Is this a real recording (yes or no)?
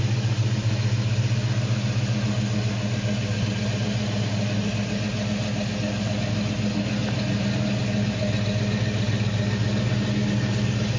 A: yes